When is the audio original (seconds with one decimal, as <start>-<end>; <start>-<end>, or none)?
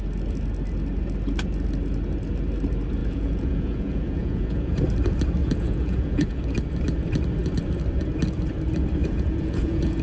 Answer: 0.0-3.0; 4.8-5.4; 6.4-9.0